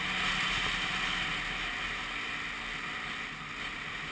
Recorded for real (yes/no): yes